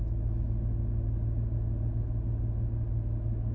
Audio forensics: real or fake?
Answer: real